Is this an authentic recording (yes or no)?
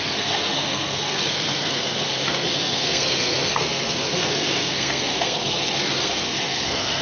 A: no